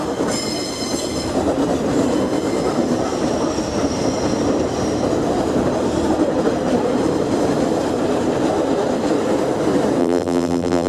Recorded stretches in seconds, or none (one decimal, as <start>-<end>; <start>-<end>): 0.0-10.0